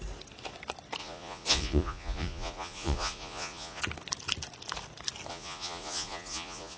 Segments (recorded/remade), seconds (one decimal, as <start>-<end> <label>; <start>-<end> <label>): 0.0-1.0 recorded; 1.0-3.8 remade; 3.8-5.3 recorded; 5.3-6.8 remade